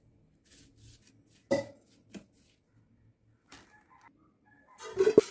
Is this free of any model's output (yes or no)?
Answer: yes